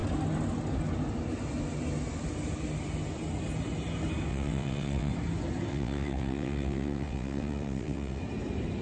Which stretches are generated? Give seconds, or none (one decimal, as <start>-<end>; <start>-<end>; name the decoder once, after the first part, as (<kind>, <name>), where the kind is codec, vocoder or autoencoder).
4.3-5.1 (vocoder, WaveNeXt); 5.7-8.2